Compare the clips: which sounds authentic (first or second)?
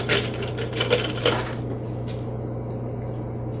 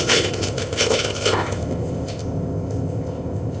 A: first